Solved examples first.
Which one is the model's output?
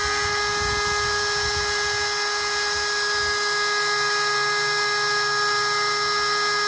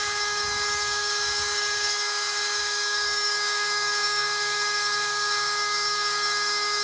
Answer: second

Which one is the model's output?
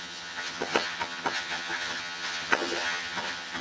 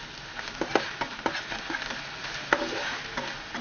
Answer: first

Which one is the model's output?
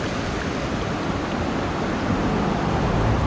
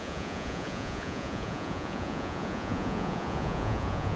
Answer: second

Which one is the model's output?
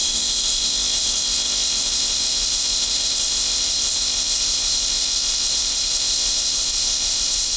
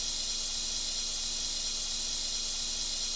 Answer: first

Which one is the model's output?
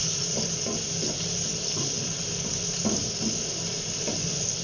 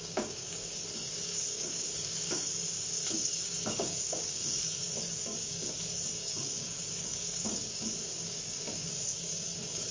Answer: second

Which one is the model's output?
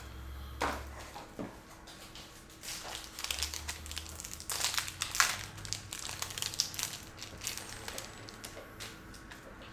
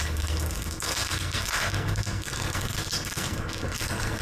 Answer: second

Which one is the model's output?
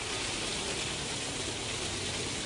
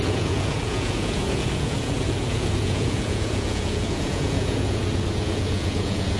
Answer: second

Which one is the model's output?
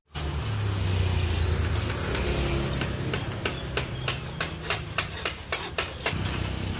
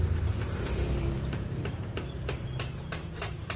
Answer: second